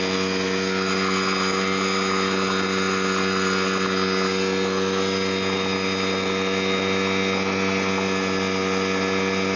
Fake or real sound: real